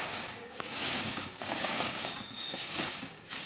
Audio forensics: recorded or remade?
remade